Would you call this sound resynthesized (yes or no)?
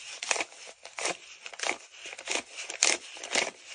yes